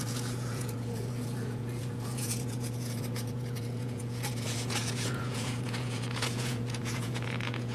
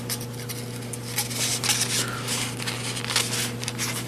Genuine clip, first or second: second